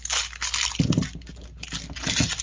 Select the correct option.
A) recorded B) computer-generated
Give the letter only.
A